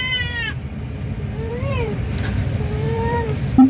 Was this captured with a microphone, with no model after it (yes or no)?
no